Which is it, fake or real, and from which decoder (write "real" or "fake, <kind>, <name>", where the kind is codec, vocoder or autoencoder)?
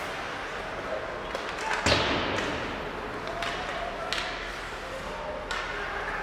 real